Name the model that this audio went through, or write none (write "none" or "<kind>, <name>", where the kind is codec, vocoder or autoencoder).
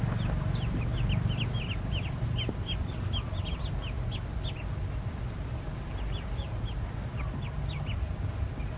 none